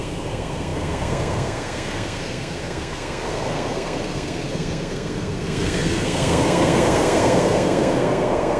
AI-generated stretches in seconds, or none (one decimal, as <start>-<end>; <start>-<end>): 0.0-8.6